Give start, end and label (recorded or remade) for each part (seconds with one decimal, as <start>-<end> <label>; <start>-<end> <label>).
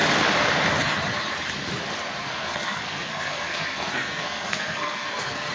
0.0-2.2 recorded; 2.2-5.5 remade